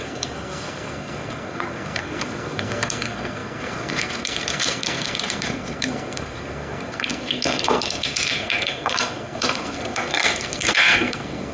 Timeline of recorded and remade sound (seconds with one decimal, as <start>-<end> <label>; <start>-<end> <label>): 0.0-11.5 remade